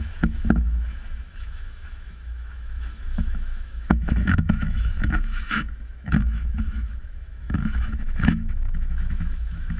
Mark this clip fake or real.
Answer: fake